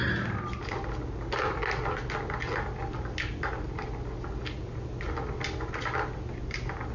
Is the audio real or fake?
real